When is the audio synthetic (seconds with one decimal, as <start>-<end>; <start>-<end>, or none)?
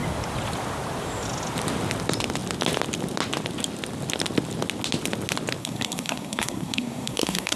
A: 5.6-7.6